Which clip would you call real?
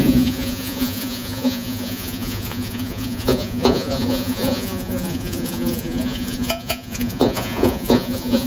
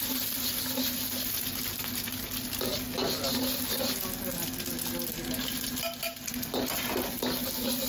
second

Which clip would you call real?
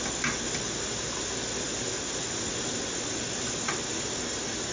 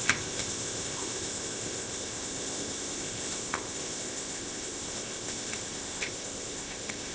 first